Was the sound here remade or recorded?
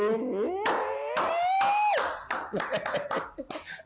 recorded